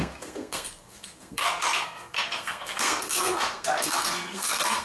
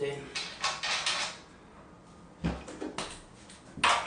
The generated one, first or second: first